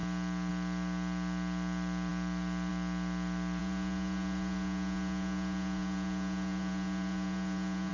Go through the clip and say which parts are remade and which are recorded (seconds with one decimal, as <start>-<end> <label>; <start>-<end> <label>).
0.0-3.6 recorded; 3.6-7.9 remade